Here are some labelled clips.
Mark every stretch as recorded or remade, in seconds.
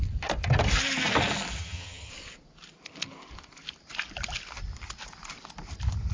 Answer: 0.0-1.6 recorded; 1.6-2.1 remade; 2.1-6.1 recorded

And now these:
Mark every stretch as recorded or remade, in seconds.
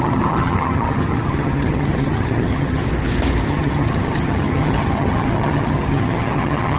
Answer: 0.0-2.8 remade; 2.8-3.5 recorded; 3.5-6.8 remade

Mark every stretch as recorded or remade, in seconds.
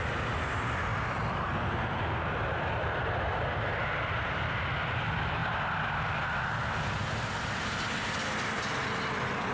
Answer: 0.0-9.5 recorded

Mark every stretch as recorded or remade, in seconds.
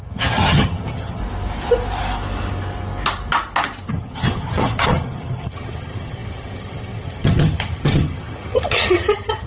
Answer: 0.0-1.2 remade; 1.2-3.9 recorded; 3.9-9.5 remade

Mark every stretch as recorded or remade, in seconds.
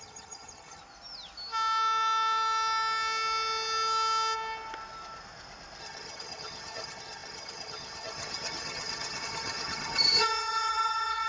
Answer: 0.0-0.8 remade; 0.8-5.8 recorded; 5.8-11.3 remade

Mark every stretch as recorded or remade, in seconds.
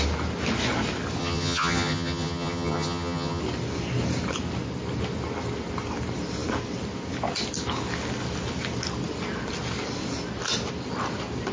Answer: 0.0-1.2 recorded; 1.2-3.4 remade; 3.4-11.5 recorded